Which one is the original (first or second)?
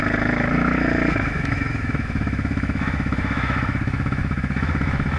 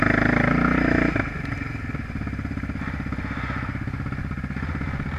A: second